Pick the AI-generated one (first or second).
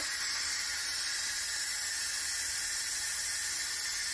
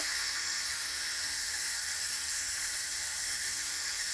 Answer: second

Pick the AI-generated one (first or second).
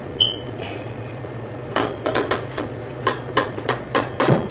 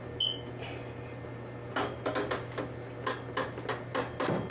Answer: first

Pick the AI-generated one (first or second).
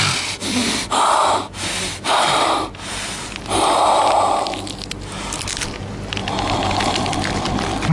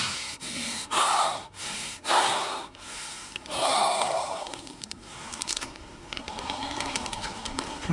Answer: second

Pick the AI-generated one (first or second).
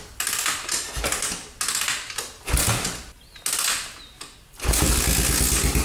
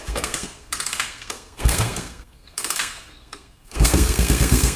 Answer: second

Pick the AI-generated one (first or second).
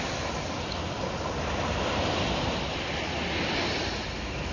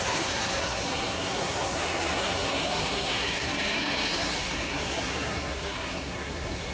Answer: second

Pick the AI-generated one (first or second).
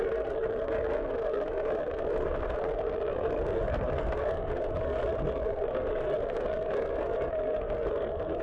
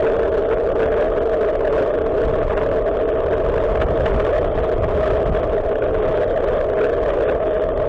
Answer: first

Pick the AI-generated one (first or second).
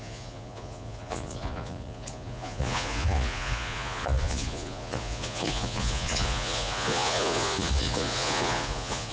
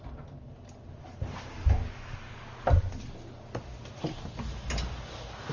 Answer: first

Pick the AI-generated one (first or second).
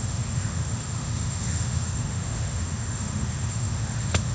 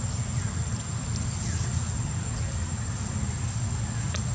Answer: first